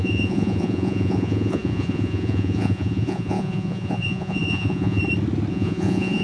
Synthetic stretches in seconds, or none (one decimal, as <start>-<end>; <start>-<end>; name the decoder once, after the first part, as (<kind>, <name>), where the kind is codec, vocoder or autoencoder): 0.0-5.0 (vocoder, Vocos); 5.5-6.2

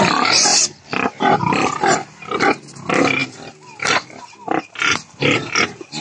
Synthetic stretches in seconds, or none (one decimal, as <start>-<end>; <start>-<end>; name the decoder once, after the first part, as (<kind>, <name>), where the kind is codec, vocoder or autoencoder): none

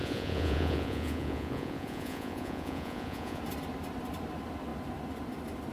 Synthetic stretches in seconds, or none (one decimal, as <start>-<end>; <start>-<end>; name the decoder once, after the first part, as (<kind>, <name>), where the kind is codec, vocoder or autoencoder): 0.0-3.4 (vocoder, Vocos)

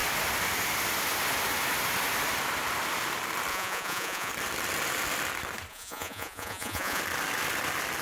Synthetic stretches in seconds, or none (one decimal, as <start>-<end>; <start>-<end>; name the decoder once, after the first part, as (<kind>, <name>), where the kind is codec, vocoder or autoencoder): 3.5-4.3 (vocoder, Vocos); 5.7-7.0

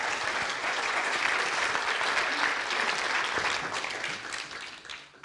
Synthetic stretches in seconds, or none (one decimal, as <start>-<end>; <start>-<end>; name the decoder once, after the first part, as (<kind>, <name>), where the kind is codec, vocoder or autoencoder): 0.6-1.2 (vocoder, Vocos)

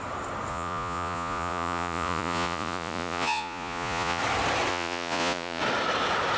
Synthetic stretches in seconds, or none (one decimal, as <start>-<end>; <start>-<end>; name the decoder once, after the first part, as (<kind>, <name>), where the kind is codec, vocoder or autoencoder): 0.5-4.2 (vocoder, Vocos); 4.7-5.6

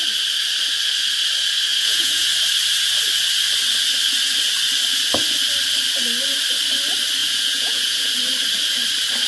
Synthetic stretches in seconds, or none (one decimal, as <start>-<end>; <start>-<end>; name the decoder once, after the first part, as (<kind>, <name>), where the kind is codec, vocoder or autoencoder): 1.7-2.3 (vocoder, Vocos); 7.2-8.1

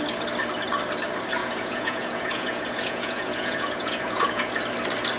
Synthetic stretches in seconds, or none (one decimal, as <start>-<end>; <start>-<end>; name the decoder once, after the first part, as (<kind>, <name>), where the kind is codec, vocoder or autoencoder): 1.4-4.5 (vocoder, Vocos)